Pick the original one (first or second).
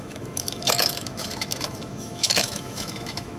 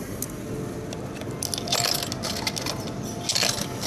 second